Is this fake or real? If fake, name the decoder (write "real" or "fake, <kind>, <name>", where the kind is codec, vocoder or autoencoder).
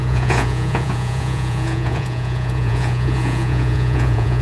fake, vocoder, Vocos